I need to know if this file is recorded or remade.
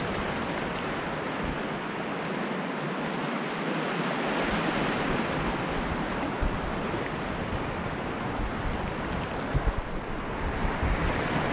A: recorded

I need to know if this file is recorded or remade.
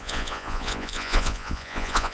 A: remade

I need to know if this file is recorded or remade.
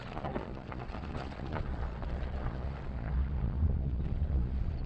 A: remade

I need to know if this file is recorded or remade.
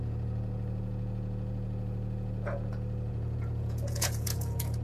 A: remade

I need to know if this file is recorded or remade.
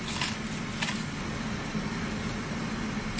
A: recorded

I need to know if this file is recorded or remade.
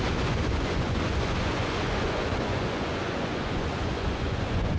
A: remade